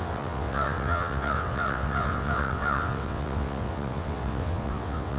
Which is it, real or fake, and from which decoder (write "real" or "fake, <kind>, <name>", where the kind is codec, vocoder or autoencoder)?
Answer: fake, vocoder, WaveNeXt